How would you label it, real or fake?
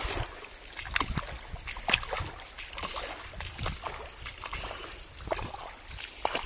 real